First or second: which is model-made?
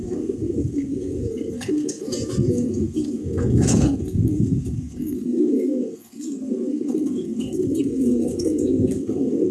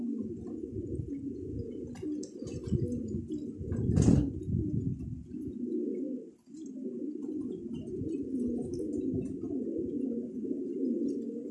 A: first